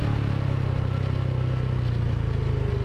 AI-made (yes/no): no